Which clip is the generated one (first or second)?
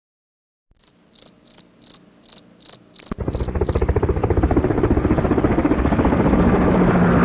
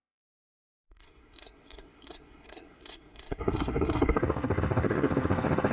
second